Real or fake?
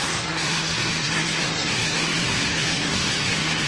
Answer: fake